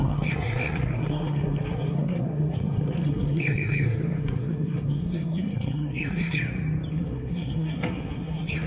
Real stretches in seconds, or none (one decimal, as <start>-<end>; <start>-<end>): 6.4-6.9